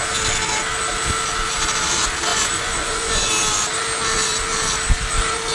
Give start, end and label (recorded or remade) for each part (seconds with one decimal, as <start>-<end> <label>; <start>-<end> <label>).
0.0-2.3 recorded; 2.3-3.3 remade; 3.3-5.5 recorded